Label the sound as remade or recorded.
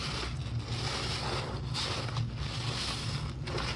recorded